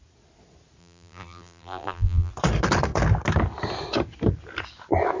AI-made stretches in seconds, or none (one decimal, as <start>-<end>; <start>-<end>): 0.8-2.3